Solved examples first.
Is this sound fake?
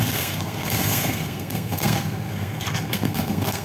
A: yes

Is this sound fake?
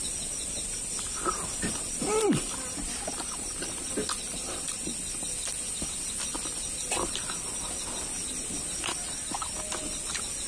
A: no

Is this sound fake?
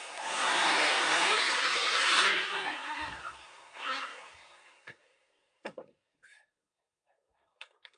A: yes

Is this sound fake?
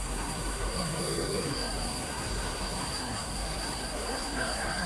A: yes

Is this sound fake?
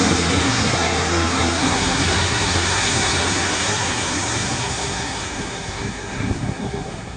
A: yes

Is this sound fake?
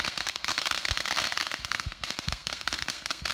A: yes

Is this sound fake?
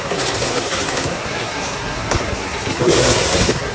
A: yes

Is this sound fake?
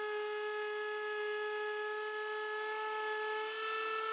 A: no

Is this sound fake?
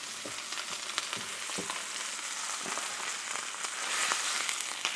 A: no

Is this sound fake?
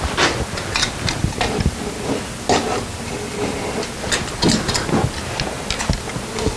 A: no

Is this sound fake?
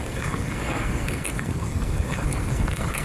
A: yes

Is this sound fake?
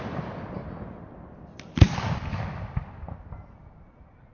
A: no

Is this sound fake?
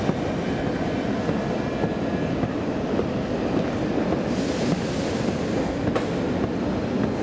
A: no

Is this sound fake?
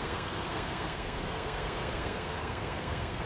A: yes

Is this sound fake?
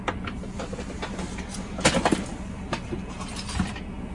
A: no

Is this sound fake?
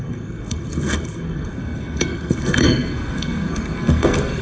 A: yes